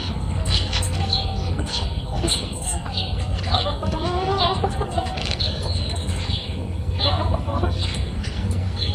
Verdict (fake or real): fake